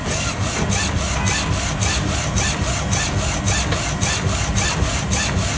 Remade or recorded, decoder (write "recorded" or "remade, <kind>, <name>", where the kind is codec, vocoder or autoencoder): recorded